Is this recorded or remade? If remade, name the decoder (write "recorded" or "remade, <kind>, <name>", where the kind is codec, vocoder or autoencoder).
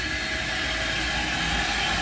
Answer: recorded